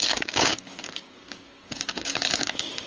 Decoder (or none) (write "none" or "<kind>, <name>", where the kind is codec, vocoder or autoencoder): codec, DAC